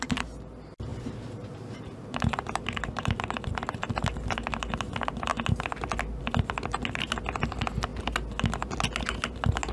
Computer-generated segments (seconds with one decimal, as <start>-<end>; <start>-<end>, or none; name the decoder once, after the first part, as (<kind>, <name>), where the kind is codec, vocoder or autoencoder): 0.9-3.9 (vocoder, BigVGAN v2)